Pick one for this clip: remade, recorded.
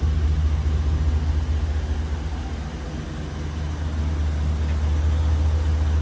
recorded